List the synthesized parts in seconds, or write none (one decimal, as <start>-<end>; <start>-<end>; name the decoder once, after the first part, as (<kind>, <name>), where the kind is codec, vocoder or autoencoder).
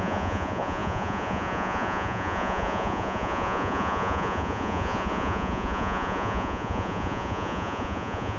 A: 0.0-8.4 (vocoder, Vocos)